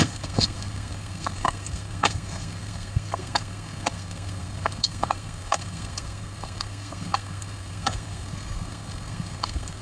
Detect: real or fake fake